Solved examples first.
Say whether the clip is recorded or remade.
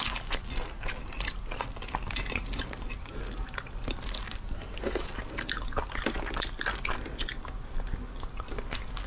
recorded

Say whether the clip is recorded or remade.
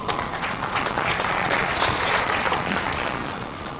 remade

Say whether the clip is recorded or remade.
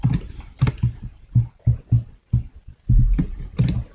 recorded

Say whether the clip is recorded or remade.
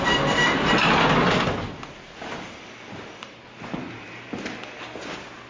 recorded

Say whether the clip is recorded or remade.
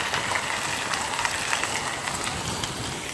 recorded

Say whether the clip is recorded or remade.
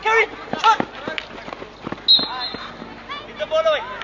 recorded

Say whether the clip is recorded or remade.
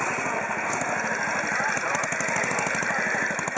recorded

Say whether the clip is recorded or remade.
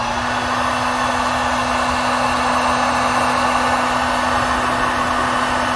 recorded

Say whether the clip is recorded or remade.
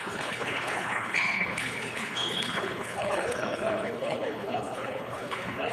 remade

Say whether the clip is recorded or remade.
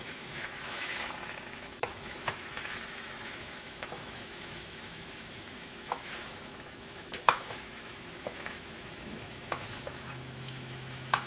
remade